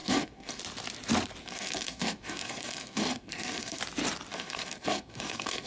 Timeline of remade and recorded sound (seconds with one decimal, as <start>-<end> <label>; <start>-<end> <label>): 0.0-0.6 remade; 0.6-1.4 recorded; 1.4-3.8 remade; 3.8-4.3 recorded; 4.3-5.7 remade